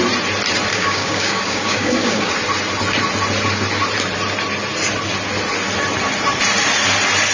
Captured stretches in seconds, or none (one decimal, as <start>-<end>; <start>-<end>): 0.0-0.7; 2.3-7.3